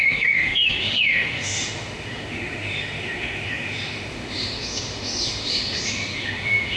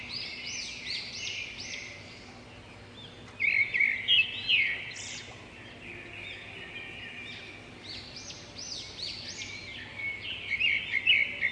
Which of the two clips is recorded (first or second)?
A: second